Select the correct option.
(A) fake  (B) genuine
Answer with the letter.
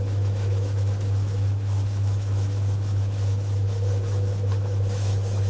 A